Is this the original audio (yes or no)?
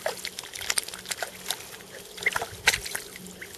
yes